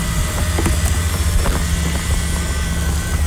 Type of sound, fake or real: real